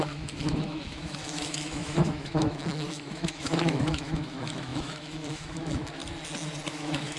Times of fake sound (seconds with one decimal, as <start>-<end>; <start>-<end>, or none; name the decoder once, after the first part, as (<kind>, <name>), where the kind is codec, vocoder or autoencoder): 0.0-6.0 (autoencoder, DAC-VAE); 6.7-7.2